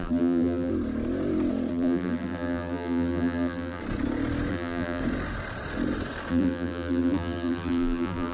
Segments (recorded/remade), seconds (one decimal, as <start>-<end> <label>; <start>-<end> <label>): 0.0-0.7 remade; 0.7-1.7 recorded; 1.7-3.8 remade; 3.8-4.5 recorded; 4.5-5.0 remade; 5.0-6.3 recorded; 6.3-8.3 remade